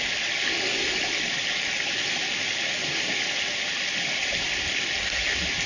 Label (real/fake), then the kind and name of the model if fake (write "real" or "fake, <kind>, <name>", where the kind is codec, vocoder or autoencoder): real